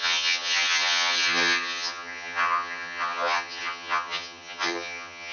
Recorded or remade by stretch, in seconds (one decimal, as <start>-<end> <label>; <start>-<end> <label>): 0.0-5.3 remade